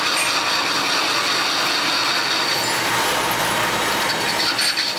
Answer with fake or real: real